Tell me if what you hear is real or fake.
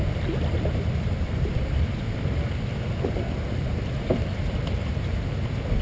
real